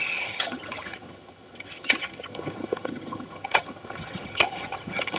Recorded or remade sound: remade